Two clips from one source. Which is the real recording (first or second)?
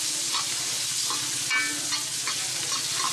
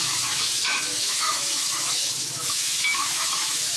first